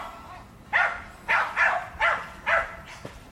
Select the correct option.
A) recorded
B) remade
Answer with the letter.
A